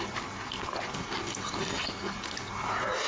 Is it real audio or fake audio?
real